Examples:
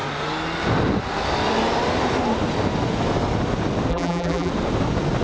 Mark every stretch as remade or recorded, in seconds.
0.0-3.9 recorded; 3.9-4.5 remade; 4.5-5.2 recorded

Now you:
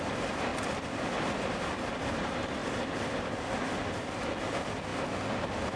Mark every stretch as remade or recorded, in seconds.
0.0-5.8 recorded